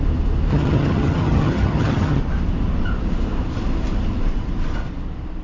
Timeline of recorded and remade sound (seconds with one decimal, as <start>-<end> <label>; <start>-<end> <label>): 0.0-0.5 recorded; 0.5-2.2 remade; 2.2-5.4 recorded